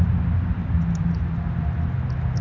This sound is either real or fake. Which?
real